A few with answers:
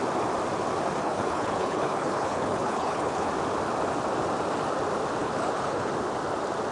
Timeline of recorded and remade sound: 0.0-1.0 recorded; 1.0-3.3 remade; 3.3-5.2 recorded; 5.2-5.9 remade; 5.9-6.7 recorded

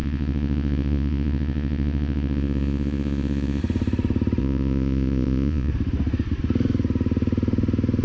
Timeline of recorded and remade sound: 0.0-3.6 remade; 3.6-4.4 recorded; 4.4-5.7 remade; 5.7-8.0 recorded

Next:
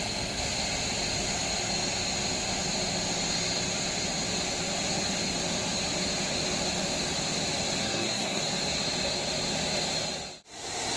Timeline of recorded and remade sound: 0.0-7.8 recorded; 7.8-8.4 remade; 8.4-11.0 recorded

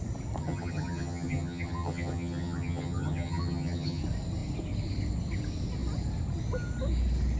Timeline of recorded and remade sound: 0.0-0.4 recorded; 0.4-4.0 remade; 4.0-7.4 recorded